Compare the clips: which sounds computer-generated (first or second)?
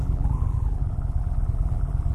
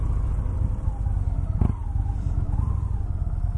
first